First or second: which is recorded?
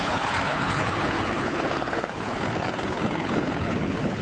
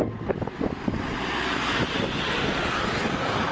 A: second